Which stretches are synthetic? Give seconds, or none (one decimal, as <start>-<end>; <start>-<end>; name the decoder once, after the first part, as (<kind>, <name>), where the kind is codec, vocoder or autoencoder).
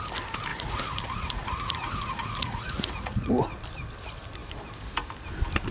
0.5-3.3 (vocoder, Vocos)